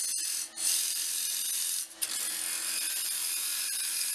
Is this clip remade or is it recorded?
recorded